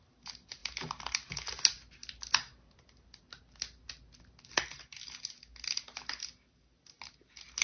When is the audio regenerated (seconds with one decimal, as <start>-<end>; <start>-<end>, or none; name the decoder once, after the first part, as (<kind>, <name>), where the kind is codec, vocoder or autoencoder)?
none

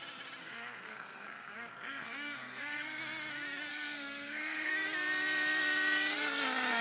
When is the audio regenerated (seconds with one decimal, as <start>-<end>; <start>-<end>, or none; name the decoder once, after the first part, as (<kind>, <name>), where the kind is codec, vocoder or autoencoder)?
0.4-3.0 (codec, SNAC); 3.7-4.7

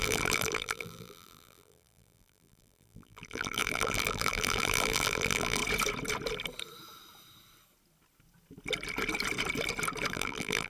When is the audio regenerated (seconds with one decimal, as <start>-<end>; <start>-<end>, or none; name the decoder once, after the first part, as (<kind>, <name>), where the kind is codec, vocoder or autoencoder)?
0.0-5.6 (vocoder, BigVGAN v2); 10.1-10.7

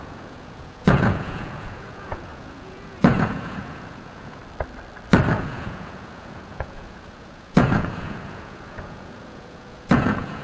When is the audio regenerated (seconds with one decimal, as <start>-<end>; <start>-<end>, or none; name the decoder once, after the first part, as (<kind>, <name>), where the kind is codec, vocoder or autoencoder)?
0.0-4.4 (vocoder, Vocos); 5.4-10.4

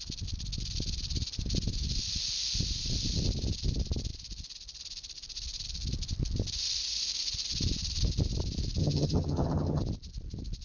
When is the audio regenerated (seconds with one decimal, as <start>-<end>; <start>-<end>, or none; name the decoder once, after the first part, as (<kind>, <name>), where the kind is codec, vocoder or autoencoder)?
8.8-9.8 (vocoder, HiFi-GAN)

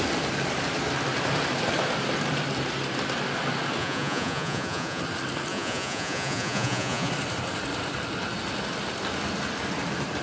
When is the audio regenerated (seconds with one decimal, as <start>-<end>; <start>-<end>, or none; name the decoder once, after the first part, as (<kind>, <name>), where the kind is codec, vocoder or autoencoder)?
3.8-5.0 (vocoder, Vocos); 5.5-7.1

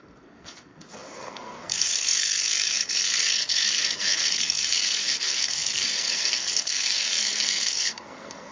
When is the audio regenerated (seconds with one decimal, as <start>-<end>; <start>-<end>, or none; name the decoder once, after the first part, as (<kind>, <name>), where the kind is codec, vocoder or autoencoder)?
0.0-8.5 (codec, SNAC)

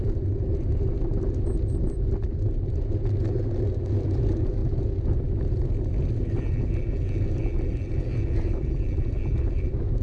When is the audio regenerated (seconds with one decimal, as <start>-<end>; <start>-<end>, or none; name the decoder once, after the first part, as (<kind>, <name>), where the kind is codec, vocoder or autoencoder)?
none